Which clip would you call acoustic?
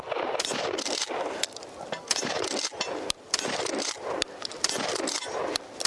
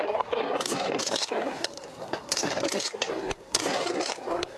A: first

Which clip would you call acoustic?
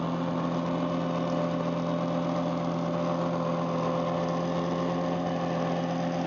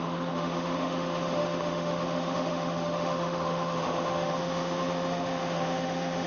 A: first